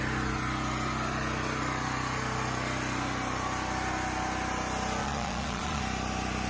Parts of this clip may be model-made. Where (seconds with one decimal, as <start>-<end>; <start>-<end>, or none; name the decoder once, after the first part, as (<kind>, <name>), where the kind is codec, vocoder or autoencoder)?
5.0-5.8 (vocoder, Vocos)